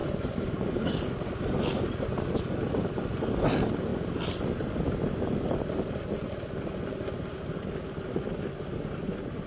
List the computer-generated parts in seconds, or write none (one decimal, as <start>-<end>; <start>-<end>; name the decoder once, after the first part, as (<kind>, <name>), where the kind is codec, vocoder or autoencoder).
0.0-0.9 (vocoder, BigVGAN v2)